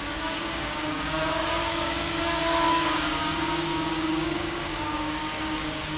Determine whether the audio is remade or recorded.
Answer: remade